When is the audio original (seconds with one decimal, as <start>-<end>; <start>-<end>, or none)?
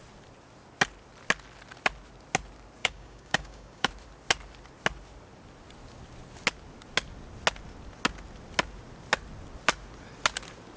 0.0-2.8; 3.9-10.8